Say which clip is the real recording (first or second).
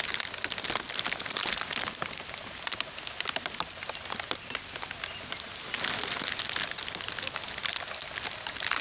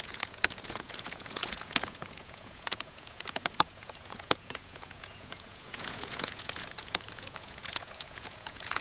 first